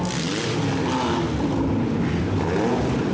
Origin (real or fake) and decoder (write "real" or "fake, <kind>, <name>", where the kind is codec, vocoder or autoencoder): real